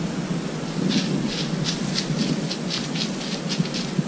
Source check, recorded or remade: recorded